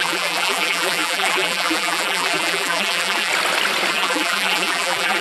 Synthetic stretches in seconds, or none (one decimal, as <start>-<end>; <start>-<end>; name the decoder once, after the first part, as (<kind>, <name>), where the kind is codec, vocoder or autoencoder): 0.0-3.3 (vocoder, BigVGAN v2); 3.9-5.2